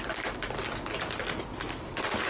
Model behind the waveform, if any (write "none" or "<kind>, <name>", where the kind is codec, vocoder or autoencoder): none